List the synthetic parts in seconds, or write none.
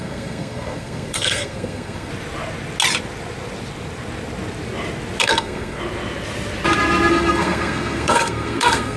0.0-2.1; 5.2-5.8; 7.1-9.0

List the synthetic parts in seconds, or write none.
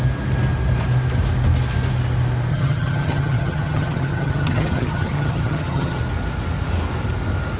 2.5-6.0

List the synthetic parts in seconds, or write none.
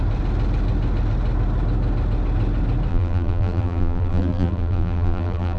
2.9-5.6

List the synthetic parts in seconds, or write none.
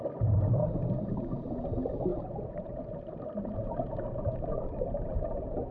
0.0-0.6; 1.7-2.1